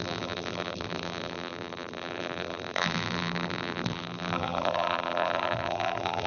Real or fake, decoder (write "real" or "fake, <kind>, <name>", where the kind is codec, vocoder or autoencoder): fake, vocoder, BigVGAN v2